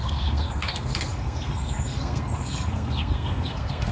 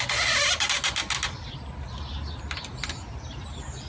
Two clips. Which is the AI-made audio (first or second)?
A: first